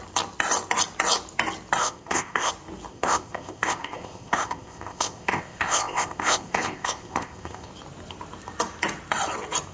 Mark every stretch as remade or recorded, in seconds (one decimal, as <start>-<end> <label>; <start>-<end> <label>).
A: 0.0-1.8 recorded; 1.8-2.5 remade; 2.5-2.9 recorded; 2.9-7.7 remade; 7.7-9.7 recorded